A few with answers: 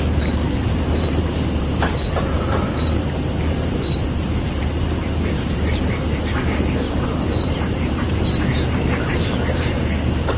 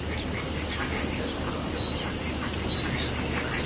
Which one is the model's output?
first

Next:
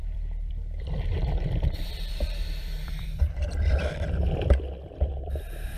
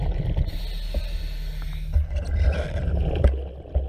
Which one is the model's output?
first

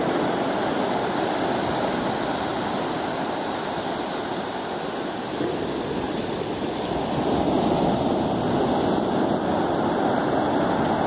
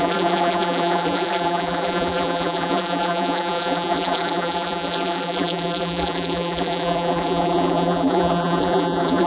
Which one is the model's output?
second